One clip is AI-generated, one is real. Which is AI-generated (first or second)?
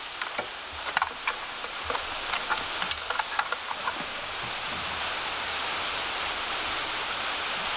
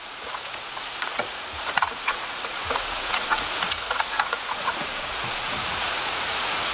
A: second